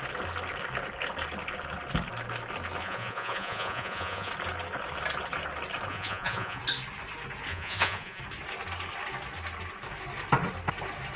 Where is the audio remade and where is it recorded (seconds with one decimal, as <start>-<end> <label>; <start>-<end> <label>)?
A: 0.0-2.8 recorded; 2.8-4.3 remade; 4.3-5.9 recorded; 5.9-6.6 remade; 6.6-7.5 recorded; 7.5-8.2 remade; 8.2-11.2 recorded